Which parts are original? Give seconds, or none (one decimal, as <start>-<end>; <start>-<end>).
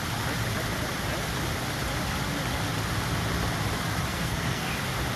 0.0-4.1; 4.7-5.2